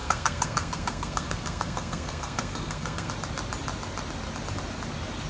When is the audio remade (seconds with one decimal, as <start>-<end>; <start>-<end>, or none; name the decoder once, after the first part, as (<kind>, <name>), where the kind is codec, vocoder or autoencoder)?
0.0-3.1 (codec, SNAC)